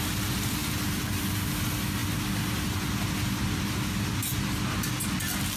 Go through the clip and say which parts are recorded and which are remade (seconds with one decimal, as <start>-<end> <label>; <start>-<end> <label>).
0.0-5.6 recorded